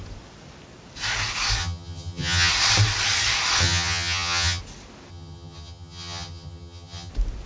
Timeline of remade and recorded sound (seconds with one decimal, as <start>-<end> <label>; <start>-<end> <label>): 0.0-1.6 recorded; 1.6-2.5 remade; 2.5-3.6 recorded; 3.6-4.6 remade; 4.6-5.1 recorded; 5.1-7.1 remade; 7.1-7.5 recorded